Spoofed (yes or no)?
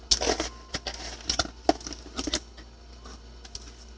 no